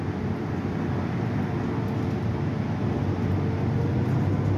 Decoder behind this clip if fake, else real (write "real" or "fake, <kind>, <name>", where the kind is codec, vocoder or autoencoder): real